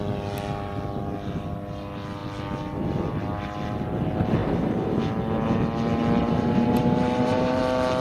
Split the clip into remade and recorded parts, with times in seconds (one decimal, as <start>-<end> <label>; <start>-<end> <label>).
0.0-4.4 recorded; 4.4-5.0 remade; 5.0-6.2 recorded; 6.2-7.6 remade; 7.6-8.0 recorded